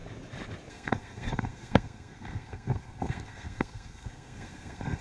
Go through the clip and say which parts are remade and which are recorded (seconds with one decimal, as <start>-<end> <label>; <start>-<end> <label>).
0.0-0.7 recorded; 0.7-5.0 remade